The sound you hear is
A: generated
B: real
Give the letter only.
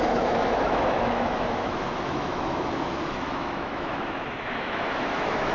A